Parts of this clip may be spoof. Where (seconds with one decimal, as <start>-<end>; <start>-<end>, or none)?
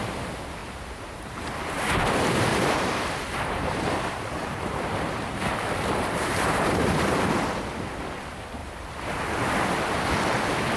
2.5-7.4